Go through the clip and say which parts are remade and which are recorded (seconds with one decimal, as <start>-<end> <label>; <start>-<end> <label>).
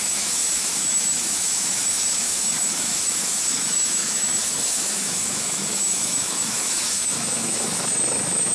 0.0-8.5 remade